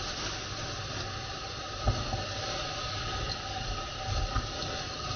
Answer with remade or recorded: recorded